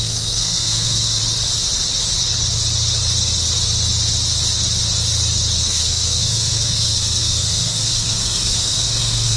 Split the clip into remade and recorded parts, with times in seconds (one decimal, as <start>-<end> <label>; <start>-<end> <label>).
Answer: 0.0-1.2 remade; 1.2-5.6 recorded; 5.6-9.4 remade